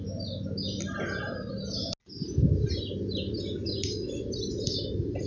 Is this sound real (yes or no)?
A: yes